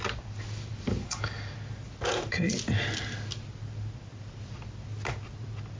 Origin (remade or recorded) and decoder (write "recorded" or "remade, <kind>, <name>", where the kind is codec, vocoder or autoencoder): recorded